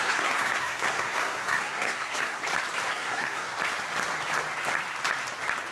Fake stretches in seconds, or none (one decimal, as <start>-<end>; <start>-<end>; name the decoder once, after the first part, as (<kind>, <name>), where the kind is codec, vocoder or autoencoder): 0.0-2.4 (codec, SNAC); 2.9-3.5